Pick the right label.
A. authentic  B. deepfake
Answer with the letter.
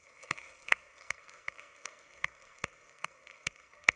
B